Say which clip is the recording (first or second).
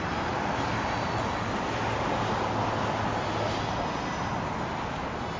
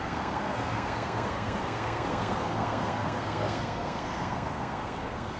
first